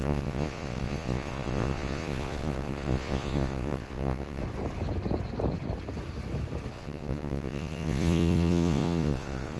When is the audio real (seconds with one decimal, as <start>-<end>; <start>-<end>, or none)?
4.4-6.7